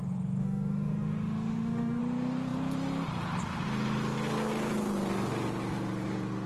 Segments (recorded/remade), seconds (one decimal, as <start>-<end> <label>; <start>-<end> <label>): 0.0-0.4 recorded; 0.4-2.0 remade; 2.0-6.5 recorded